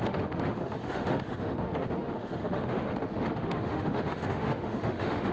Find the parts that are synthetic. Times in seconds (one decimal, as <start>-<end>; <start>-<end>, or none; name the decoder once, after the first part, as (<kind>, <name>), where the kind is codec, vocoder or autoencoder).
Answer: 0.0-5.3 (autoencoder, DAC-VAE)